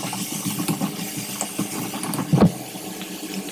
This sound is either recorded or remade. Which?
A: recorded